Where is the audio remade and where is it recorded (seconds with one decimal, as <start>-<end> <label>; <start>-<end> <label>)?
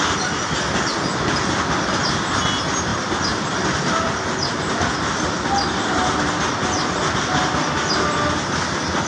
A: 0.0-9.1 recorded